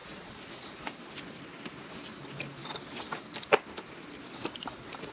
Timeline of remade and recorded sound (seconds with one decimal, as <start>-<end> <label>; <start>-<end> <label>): 0.0-0.9 remade; 0.9-5.1 recorded

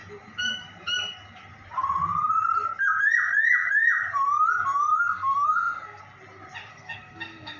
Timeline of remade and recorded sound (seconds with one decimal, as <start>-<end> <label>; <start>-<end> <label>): 0.0-4.9 recorded; 4.9-6.0 remade; 6.0-6.7 recorded; 6.7-7.6 remade

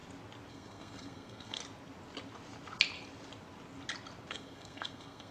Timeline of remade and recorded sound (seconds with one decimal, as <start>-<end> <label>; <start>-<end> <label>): 0.0-0.5 recorded; 0.5-1.6 remade; 1.6-4.3 recorded; 4.3-5.3 remade

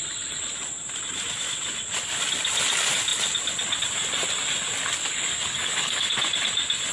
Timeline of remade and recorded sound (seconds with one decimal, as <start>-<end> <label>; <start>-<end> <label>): 0.0-5.0 recorded; 5.0-6.1 remade; 6.1-6.9 recorded

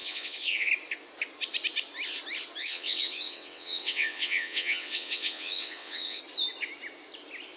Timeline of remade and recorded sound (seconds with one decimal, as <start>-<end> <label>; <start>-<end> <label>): 0.0-0.7 remade; 0.7-2.6 recorded; 2.6-6.2 remade; 6.2-7.6 recorded

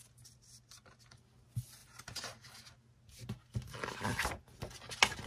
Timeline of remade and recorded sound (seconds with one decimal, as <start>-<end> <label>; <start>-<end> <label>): 0.0-5.3 recorded